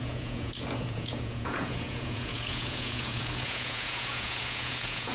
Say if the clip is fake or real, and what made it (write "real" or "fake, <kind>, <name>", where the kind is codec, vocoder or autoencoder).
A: fake, vocoder, Vocos